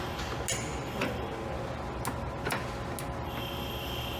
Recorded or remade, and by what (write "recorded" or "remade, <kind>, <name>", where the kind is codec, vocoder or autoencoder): recorded